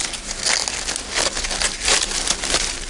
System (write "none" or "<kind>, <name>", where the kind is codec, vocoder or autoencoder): none